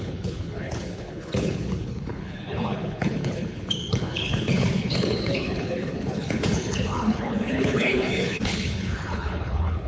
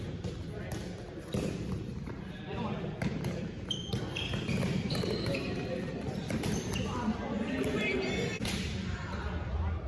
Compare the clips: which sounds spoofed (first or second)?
first